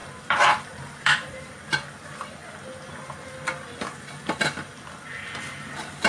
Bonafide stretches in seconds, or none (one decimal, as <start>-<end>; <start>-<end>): 1.5-6.1